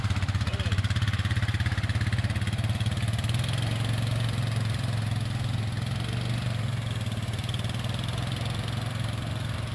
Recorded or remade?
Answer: recorded